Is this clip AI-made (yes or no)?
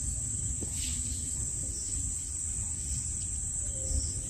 yes